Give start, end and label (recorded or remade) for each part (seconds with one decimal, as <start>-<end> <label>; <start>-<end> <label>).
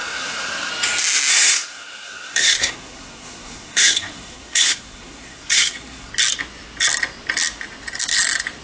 0.0-0.7 remade; 0.7-1.3 recorded; 1.3-6.1 remade; 6.1-8.6 recorded